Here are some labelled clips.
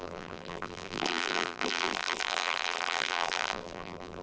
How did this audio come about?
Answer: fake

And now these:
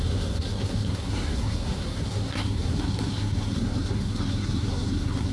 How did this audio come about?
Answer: fake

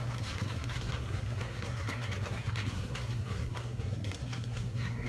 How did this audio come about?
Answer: fake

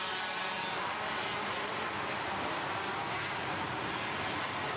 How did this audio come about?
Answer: real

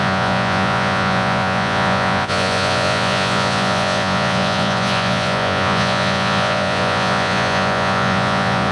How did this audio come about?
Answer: fake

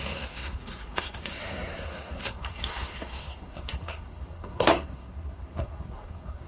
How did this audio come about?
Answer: fake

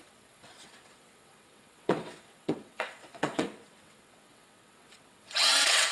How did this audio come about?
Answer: fake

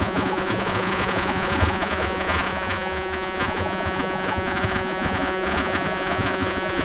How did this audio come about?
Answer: fake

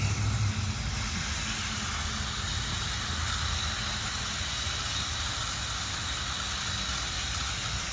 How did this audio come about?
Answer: real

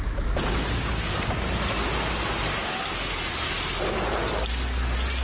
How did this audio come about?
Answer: real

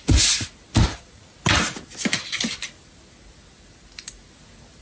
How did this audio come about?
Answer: real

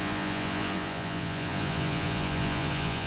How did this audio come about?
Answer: fake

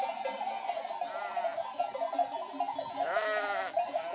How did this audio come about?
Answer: real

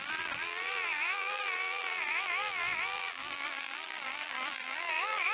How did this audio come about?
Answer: fake